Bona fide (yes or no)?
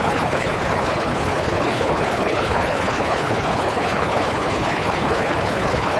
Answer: no